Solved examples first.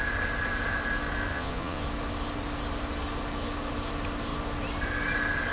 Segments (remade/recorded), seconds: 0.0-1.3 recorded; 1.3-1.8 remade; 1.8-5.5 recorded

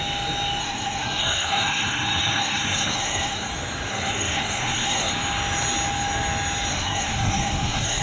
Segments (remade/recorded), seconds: 0.0-0.6 recorded; 0.6-3.5 remade; 3.5-3.9 recorded; 3.9-5.1 remade; 5.1-6.7 recorded; 6.7-8.0 remade